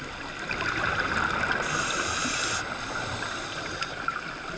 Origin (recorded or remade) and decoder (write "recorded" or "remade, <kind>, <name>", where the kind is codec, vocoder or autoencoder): recorded